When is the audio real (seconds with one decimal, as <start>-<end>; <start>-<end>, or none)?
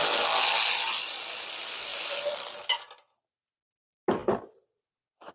0.0-5.3